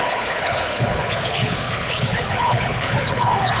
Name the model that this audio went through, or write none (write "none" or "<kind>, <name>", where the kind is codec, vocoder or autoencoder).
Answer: codec, HILCodec